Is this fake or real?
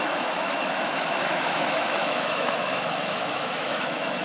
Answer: fake